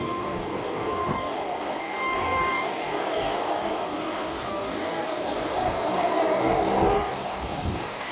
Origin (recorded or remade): remade